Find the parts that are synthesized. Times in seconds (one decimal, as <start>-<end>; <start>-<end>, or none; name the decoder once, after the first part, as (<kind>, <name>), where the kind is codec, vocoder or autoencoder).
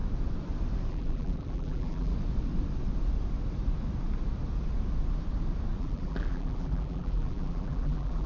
0.9-2.1 (vocoder, BigVGAN v2); 5.8-8.3